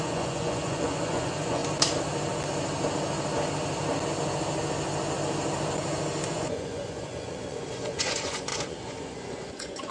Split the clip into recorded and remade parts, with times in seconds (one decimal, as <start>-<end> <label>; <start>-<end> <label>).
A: 0.0-1.6 remade; 1.6-6.3 recorded; 6.3-9.9 remade